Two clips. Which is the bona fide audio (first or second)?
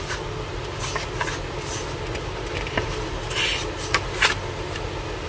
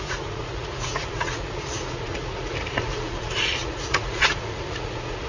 first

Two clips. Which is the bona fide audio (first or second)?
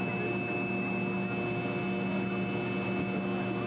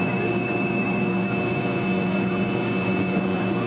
first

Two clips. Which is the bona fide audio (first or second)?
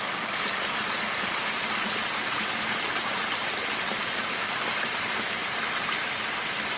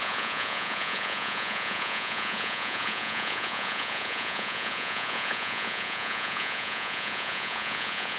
first